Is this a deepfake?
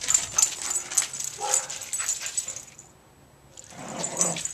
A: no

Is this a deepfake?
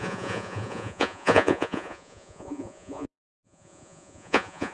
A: yes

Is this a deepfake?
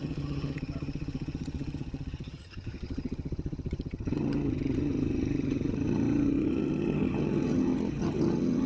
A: yes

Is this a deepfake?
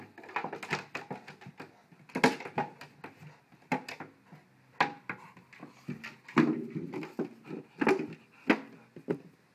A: no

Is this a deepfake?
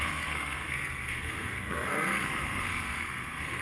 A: yes